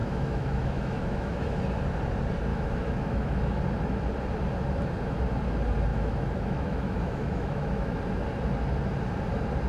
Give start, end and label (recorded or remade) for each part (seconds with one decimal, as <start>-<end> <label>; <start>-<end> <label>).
0.0-1.6 remade; 1.6-2.5 recorded; 2.5-3.6 remade; 3.6-5.9 recorded; 5.9-8.0 remade; 8.0-9.7 recorded